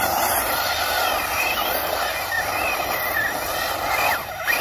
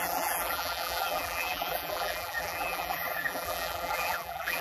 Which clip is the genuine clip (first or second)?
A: first